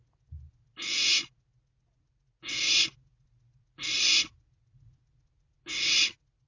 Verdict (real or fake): real